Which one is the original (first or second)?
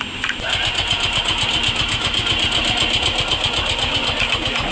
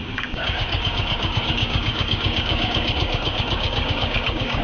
first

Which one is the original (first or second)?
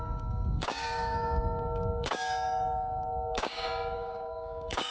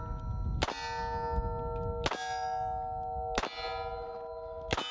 second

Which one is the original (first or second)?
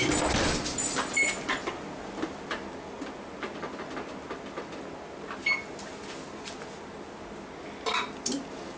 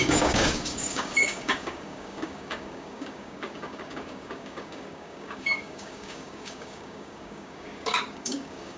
first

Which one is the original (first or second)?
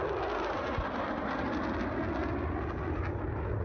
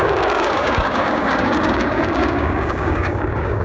first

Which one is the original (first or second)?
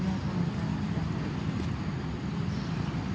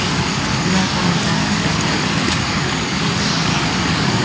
first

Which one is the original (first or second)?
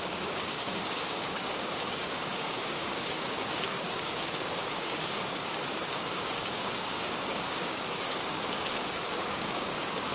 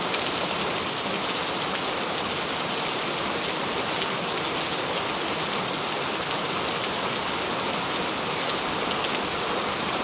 second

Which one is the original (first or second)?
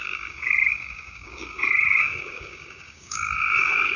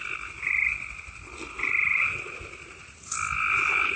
second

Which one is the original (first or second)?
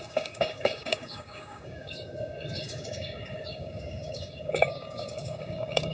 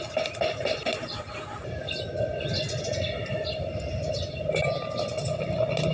second